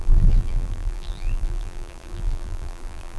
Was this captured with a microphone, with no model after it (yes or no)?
no